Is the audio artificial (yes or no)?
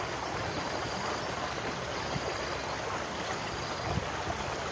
no